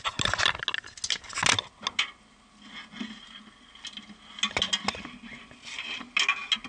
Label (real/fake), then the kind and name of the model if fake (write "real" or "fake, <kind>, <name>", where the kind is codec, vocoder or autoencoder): real